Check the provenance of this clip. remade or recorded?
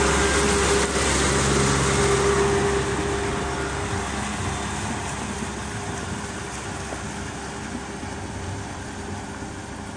recorded